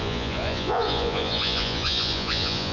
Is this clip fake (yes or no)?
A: yes